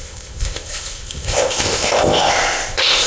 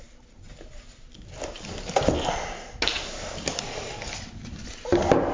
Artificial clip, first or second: first